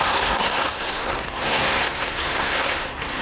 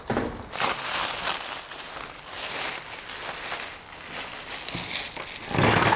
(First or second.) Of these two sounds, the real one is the second